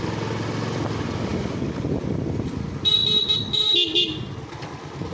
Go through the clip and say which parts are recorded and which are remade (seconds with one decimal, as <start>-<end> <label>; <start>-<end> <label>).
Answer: 0.0-5.1 recorded